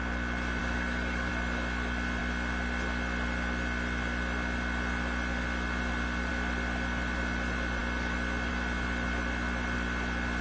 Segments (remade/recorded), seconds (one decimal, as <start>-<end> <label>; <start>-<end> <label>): 0.0-0.6 recorded; 0.6-1.3 remade; 1.3-10.4 recorded